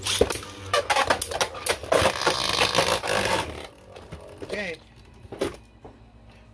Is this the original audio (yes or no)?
yes